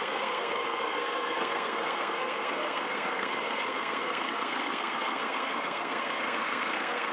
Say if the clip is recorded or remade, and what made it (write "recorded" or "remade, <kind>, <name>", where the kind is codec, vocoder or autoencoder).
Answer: remade, codec, SNAC